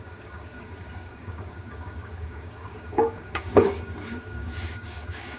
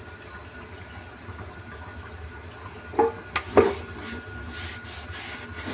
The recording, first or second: second